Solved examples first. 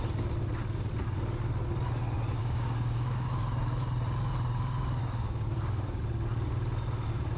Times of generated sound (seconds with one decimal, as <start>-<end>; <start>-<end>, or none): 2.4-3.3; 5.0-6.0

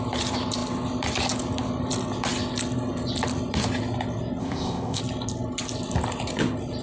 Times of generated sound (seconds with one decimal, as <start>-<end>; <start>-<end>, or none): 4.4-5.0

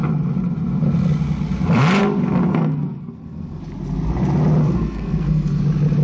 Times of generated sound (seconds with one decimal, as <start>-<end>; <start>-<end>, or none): 2.5-3.6; 4.6-5.6

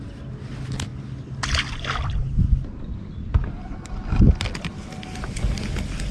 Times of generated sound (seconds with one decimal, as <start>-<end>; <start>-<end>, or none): none